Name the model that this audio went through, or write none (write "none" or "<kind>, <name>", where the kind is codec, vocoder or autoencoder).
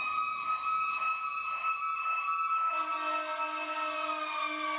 none